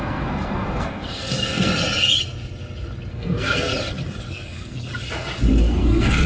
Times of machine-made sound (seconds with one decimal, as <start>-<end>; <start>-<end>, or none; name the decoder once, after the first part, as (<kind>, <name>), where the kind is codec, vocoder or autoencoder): 0.0-1.7 (codec, SNAC); 3.1-3.7; 4.3-4.9; 5.6-6.3